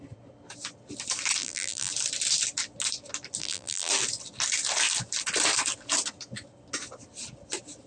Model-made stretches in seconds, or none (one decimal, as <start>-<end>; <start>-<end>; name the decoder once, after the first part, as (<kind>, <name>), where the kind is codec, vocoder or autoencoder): 1.4-1.9 (vocoder, BigVGAN v2); 3.4-3.9